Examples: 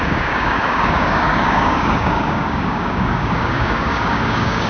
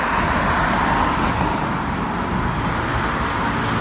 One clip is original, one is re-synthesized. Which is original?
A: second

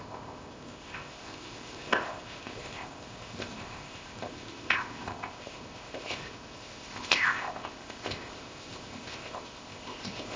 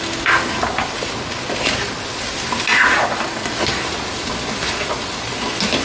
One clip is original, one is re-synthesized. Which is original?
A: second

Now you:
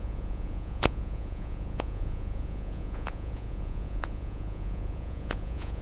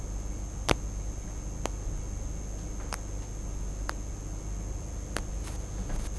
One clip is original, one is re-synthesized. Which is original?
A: second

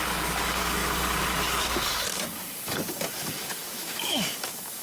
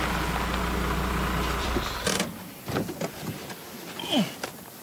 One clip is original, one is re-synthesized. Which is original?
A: second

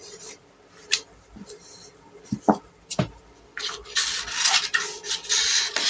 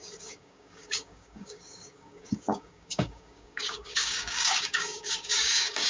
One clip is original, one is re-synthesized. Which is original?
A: first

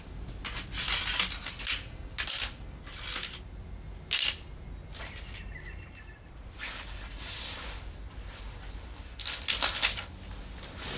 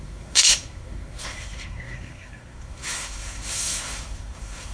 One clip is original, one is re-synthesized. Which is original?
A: first